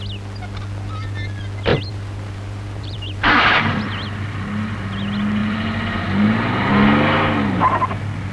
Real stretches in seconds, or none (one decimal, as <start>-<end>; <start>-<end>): 0.0-1.7; 3.8-5.4; 6.7-8.3